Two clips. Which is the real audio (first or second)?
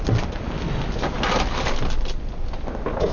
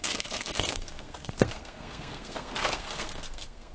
first